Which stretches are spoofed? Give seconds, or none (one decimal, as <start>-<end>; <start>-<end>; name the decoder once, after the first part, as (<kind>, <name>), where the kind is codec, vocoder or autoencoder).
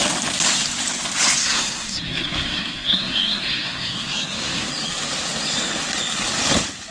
1.4-4.7 (codec, SNAC)